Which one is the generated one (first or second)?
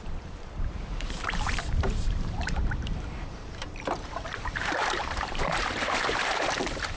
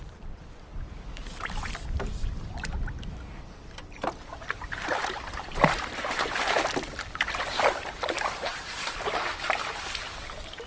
first